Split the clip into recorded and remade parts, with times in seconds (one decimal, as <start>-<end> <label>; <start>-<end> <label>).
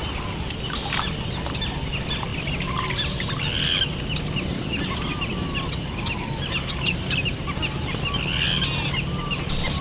0.0-9.8 recorded